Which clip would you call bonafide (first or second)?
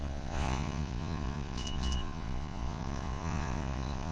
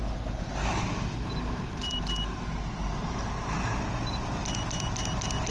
second